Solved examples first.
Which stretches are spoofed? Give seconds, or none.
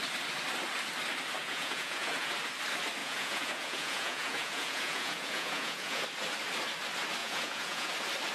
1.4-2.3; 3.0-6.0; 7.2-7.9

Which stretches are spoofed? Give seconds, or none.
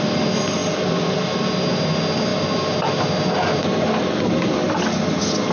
none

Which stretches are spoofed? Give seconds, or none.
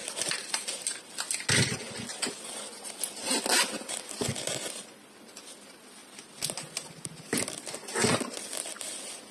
none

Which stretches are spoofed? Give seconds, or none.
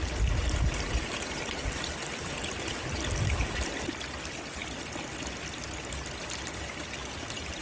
none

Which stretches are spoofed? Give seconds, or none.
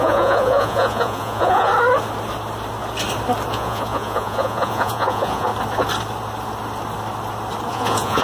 0.0-1.7; 3.5-5.5; 7.7-8.2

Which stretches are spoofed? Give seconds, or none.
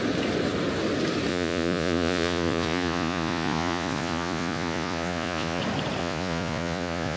1.3-5.6; 6.0-7.2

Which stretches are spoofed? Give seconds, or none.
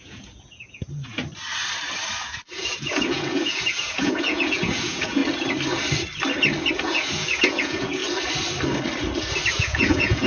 0.0-1.2; 2.2-5.2; 6.7-8.0; 9.5-10.3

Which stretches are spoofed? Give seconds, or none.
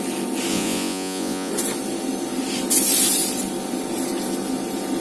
0.5-1.5